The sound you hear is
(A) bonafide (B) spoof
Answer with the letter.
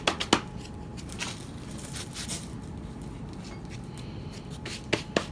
A